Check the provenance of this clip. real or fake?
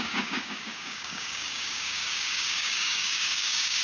fake